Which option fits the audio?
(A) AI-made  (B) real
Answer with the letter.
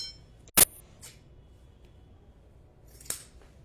B